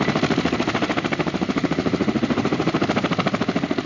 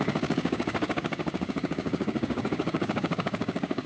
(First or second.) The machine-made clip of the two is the second